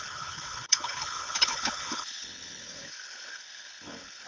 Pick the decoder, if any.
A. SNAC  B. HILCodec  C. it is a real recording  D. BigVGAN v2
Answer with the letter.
B